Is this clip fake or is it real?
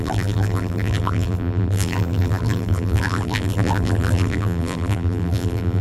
fake